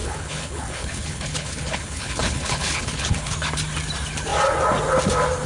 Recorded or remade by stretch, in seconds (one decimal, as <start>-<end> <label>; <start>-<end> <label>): 0.0-3.3 remade; 3.3-5.5 recorded